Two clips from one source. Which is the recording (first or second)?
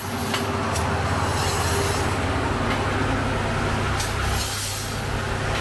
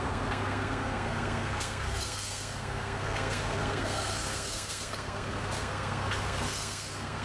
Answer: first